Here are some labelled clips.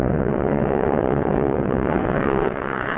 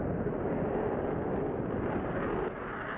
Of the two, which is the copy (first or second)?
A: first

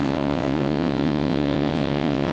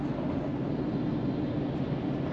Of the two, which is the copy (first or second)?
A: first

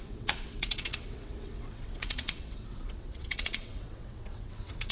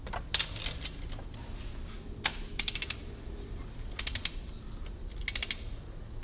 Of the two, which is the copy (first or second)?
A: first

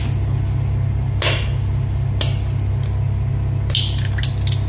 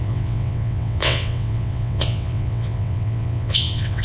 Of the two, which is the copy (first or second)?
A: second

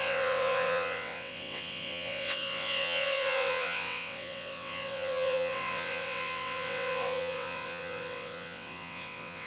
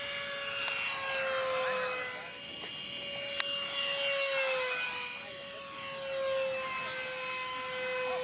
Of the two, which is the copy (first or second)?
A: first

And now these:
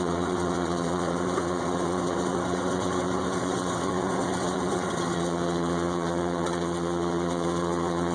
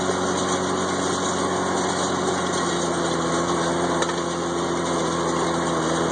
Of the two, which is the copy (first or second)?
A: first